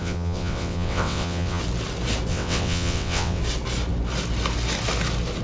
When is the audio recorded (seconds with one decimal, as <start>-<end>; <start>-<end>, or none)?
1.6-2.3; 3.4-5.4